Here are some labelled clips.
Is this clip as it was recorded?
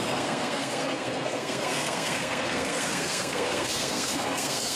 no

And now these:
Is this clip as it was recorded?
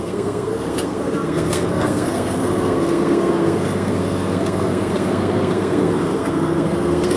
no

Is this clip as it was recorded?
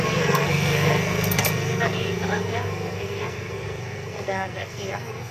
no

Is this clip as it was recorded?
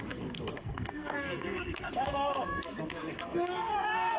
no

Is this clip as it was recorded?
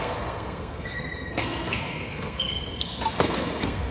no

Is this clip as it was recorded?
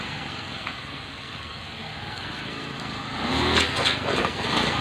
no